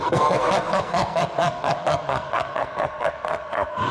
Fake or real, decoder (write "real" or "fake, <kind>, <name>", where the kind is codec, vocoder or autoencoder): fake, codec, SNAC